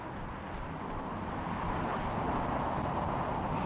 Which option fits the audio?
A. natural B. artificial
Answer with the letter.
A